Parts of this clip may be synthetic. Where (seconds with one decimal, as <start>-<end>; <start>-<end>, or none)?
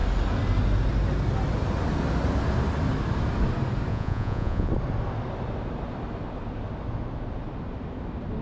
3.9-4.7